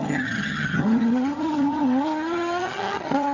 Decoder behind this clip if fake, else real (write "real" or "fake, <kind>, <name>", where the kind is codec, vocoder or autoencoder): fake, vocoder, HiFi-GAN